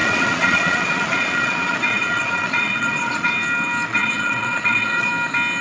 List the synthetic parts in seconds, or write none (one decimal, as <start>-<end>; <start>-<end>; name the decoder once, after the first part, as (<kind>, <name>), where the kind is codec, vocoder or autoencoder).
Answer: 0.0-3.3 (vocoder, Vocos); 3.9-5.1